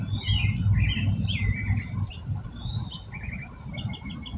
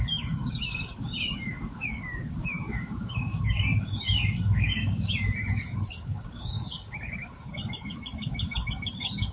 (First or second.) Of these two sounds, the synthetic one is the second